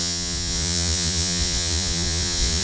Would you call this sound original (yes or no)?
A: no